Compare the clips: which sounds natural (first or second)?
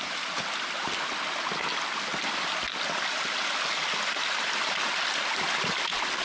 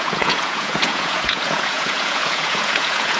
first